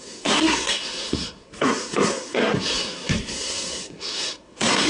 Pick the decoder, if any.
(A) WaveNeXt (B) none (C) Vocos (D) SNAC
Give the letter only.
D